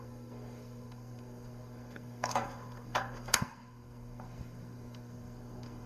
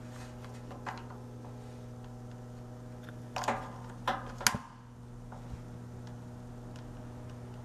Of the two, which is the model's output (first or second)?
first